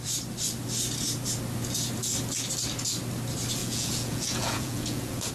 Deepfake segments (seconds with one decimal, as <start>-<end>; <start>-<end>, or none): 3.6-5.3